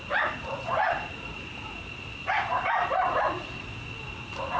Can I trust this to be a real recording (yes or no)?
no